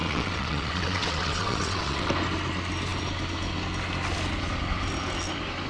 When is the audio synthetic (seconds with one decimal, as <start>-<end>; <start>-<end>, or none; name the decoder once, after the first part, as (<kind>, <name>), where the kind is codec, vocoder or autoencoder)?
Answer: 0.0-2.1 (vocoder, WaveNeXt)